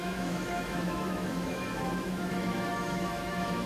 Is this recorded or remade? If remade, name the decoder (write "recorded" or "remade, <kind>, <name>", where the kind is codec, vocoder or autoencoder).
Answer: remade, autoencoder, DAC-VAE